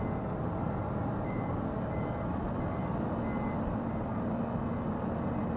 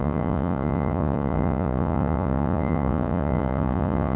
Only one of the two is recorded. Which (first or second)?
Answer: first